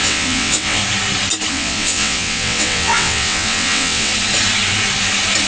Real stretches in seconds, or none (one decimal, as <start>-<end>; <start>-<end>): 0.8-1.5; 4.1-5.5